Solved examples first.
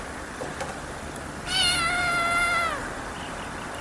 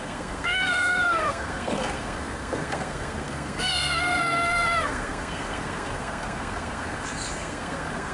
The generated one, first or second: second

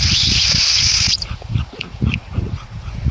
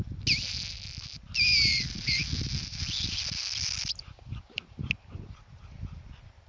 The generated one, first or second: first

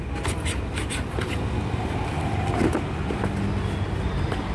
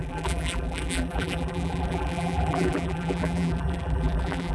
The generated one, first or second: second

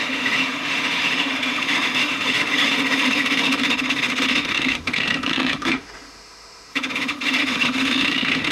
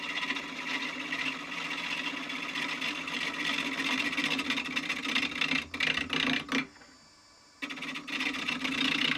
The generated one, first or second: first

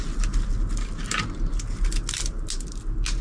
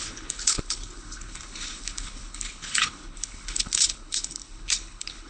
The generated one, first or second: second